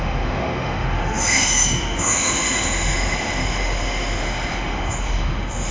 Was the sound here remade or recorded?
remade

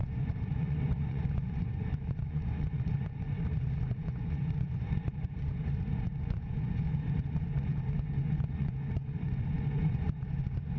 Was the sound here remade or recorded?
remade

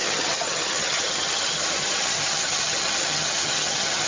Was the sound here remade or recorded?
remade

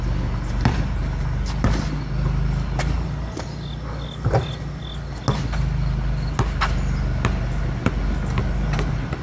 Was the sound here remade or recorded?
recorded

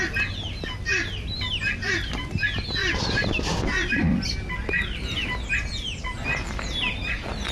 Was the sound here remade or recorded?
recorded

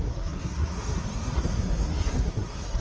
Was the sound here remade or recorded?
remade